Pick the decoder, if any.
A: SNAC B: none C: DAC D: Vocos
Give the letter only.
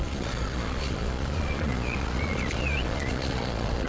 D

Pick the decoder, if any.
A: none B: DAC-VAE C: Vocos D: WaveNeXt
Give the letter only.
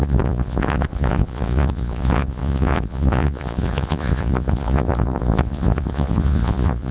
C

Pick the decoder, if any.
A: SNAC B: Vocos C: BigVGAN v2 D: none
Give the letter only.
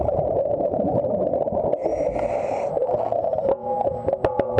D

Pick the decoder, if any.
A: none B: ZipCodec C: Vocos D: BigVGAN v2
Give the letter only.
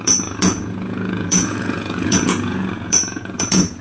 C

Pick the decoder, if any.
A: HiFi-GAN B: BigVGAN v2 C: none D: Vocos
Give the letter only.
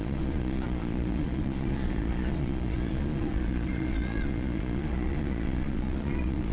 D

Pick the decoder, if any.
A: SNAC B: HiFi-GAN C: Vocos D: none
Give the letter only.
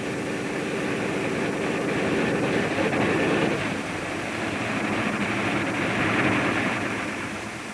D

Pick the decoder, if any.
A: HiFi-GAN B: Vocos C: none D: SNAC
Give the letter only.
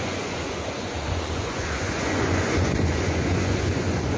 B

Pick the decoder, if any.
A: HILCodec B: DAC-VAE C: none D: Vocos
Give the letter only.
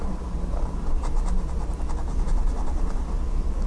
C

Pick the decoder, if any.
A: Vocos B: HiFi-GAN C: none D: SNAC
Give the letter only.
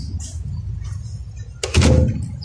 C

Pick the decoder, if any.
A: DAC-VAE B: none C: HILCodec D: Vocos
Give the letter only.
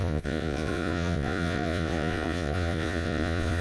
D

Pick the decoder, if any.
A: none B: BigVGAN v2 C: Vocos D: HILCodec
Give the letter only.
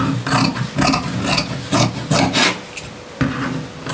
A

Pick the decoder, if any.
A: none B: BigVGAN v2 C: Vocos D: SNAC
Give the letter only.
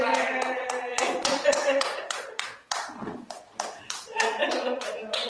C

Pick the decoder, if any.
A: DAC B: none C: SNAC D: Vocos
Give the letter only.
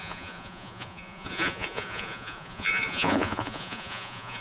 D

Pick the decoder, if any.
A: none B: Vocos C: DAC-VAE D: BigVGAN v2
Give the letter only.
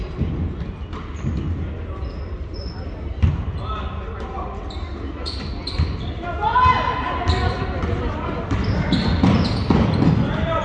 A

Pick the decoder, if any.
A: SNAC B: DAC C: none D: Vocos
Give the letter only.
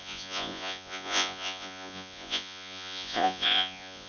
D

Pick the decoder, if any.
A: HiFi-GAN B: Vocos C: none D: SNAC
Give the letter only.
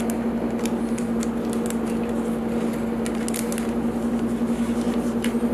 C